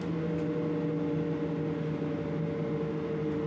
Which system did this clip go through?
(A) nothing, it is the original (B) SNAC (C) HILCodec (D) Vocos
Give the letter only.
A